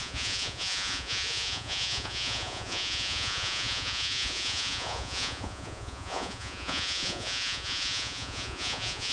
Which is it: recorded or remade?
remade